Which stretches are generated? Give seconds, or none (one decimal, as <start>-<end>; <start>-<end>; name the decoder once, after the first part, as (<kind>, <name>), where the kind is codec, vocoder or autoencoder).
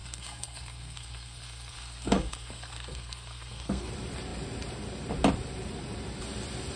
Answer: 0.0-3.9 (codec, SNAC)